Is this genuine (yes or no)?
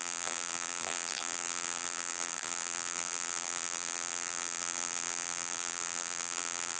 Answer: no